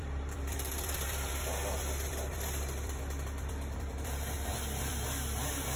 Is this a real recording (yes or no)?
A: no